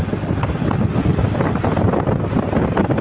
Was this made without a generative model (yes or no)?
yes